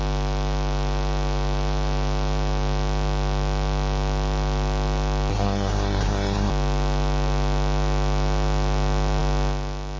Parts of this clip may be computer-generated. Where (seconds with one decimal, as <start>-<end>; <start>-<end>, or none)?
5.3-6.5